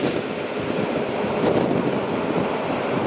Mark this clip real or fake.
real